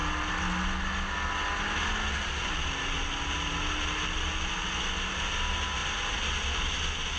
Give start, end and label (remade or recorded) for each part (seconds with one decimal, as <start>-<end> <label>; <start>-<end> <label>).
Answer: 0.0-7.2 recorded